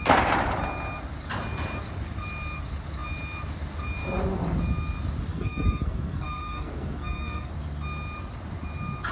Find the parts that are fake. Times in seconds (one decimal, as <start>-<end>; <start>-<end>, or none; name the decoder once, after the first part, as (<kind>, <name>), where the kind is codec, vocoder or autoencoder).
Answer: 5.3-7.5 (codec, SNAC)